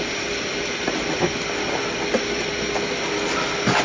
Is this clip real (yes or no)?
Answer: yes